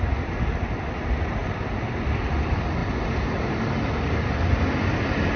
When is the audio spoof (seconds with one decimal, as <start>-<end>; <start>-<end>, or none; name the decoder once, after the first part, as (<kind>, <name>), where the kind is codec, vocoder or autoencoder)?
2.8-4.3 (vocoder, BigVGAN v2)